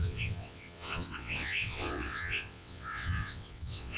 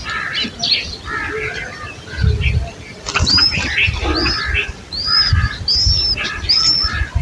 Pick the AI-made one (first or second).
first